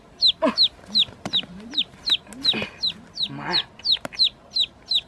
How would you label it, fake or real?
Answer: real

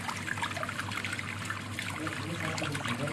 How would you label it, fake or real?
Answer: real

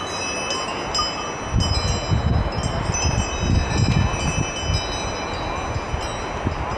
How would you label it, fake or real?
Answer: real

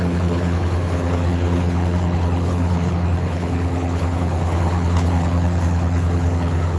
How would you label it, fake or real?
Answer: fake